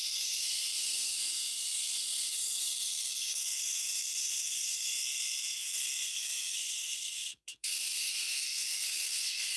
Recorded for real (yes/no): no